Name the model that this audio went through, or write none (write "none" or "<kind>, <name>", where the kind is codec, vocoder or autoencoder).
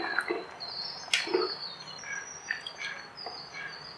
none